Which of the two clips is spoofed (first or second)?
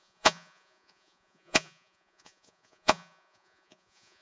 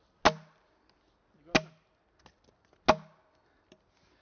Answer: first